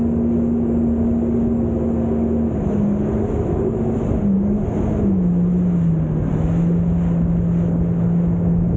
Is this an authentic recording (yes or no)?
yes